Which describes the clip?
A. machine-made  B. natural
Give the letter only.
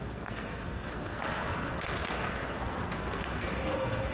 A